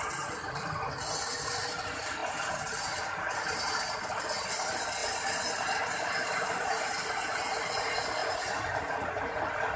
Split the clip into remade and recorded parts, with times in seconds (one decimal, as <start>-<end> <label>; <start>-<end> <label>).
0.0-8.2 recorded; 8.2-9.4 remade; 9.4-9.8 recorded